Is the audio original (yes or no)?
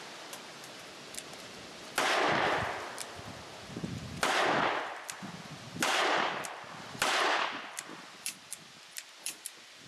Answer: yes